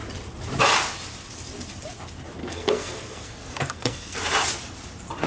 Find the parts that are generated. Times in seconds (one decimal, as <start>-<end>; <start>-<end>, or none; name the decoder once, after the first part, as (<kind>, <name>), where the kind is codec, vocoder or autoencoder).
2.4-4.2 (codec, SNAC)